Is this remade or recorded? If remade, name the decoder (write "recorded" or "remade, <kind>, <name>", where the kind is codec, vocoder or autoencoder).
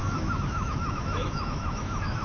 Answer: remade, autoencoder, DAC-VAE